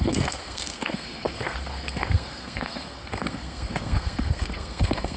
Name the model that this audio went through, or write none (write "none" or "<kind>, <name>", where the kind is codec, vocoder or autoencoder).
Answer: codec, SNAC